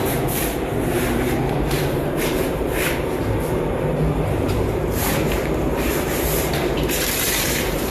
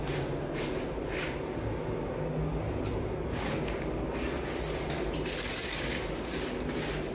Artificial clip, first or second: first